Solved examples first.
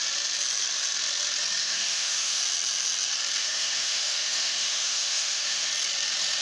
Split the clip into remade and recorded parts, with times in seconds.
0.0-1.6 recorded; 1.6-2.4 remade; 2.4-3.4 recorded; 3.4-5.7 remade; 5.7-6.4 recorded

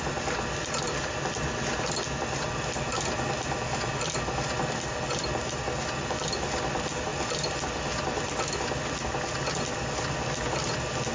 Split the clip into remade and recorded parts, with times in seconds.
0.0-11.1 recorded

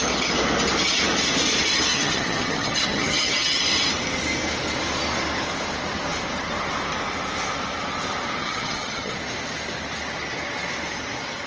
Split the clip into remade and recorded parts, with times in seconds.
0.0-1.9 recorded; 1.9-3.6 remade; 3.6-8.4 recorded; 8.4-9.1 remade; 9.1-11.5 recorded

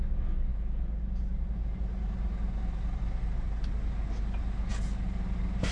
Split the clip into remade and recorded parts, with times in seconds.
0.0-5.7 recorded

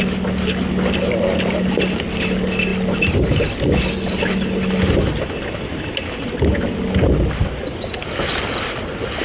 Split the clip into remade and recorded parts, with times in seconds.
0.0-9.2 recorded